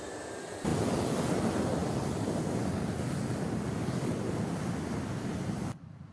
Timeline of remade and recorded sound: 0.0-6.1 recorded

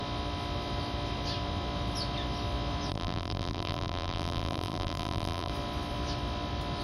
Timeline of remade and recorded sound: 0.0-2.9 recorded; 2.9-5.5 remade; 5.5-6.8 recorded